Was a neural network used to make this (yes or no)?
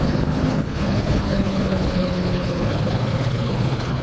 yes